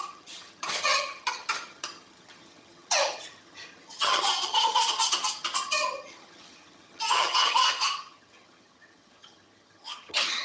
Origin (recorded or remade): remade